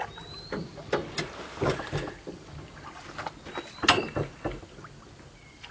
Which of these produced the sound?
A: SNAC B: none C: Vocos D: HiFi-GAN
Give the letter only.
B